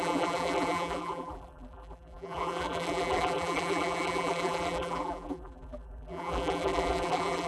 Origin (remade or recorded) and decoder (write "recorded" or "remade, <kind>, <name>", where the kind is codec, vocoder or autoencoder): remade, vocoder, BigVGAN v2